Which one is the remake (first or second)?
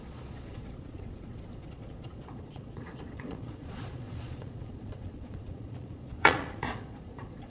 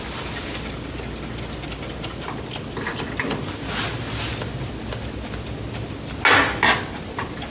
first